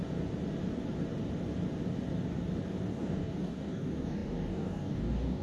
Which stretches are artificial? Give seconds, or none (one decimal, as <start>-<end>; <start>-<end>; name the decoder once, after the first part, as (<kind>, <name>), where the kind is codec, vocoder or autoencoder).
2.9-5.4 (codec, DAC)